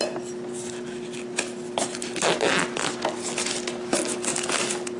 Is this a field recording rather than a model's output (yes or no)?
yes